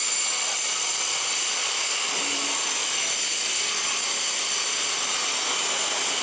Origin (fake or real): real